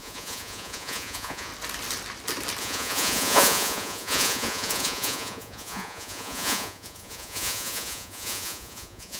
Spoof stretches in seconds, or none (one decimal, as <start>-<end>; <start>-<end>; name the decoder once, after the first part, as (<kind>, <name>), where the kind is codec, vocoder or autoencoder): 0.0-1.5 (vocoder, Vocos); 2.6-9.2